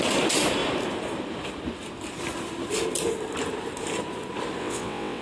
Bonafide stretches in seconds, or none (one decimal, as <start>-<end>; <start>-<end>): 0.0-4.6

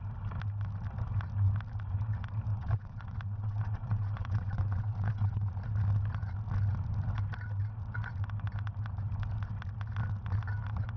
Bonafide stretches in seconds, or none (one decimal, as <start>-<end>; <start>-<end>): 0.0-2.5; 5.5-11.0